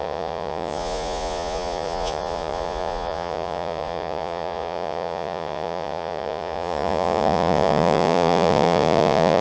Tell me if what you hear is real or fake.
fake